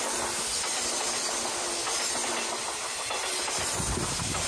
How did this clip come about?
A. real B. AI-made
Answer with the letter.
A